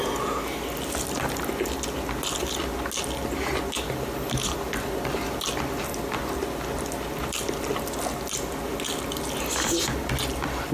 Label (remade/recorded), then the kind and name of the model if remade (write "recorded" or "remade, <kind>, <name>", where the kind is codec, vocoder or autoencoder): recorded